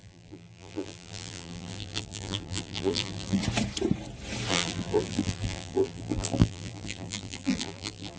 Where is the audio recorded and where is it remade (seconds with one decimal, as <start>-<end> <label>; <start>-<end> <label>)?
0.0-3.4 remade; 3.4-4.5 recorded; 4.5-8.2 remade